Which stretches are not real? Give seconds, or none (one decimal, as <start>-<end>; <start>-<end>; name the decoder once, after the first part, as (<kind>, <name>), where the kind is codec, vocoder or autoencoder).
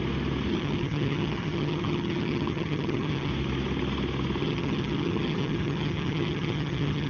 0.5-3.3 (vocoder, HiFi-GAN); 4.4-7.1